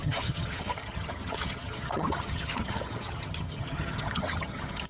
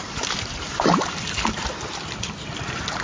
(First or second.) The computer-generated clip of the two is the first